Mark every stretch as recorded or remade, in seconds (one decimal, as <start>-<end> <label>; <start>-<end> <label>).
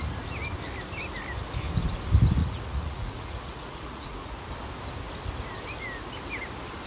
0.0-2.4 recorded; 2.4-4.5 remade; 4.5-6.9 recorded